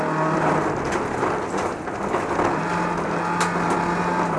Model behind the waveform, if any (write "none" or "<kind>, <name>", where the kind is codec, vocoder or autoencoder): none